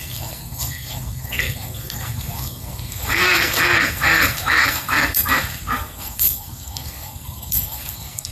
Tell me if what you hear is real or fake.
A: fake